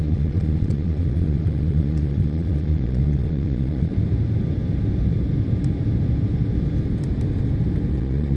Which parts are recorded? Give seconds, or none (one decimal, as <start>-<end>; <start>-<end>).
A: 3.9-7.9